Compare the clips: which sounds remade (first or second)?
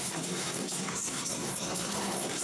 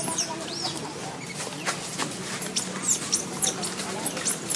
first